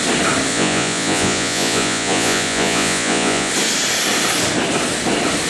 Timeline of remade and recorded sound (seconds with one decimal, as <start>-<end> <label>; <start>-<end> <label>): 0.0-0.5 recorded; 0.5-3.5 remade; 3.5-5.5 recorded